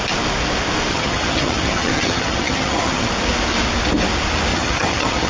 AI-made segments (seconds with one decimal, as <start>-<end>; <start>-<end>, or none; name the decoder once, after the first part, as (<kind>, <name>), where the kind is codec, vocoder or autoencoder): 0.9-3.1 (vocoder, HiFi-GAN); 4.5-5.3